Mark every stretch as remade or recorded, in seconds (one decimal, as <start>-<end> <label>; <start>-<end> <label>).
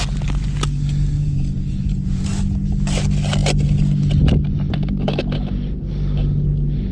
0.0-1.2 recorded; 1.2-2.2 remade; 2.2-6.9 recorded